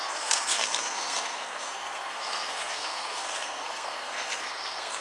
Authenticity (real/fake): fake